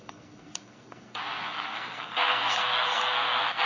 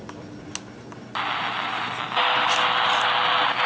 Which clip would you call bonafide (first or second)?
second